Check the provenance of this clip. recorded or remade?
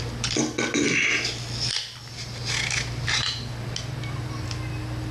recorded